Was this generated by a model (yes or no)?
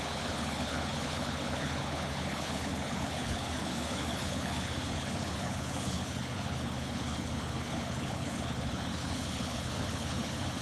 yes